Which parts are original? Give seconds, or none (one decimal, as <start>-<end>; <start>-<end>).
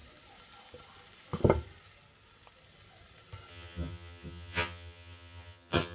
0.0-3.5